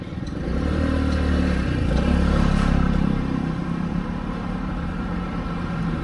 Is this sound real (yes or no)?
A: no